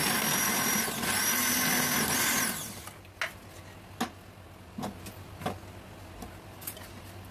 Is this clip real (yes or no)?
yes